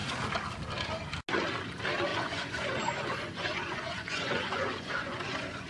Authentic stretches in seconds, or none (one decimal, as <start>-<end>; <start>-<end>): 0.0-2.1